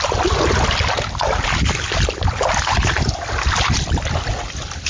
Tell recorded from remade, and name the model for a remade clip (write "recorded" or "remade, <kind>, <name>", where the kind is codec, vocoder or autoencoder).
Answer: recorded